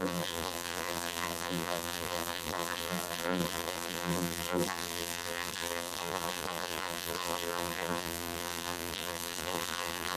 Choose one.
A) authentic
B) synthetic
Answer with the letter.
B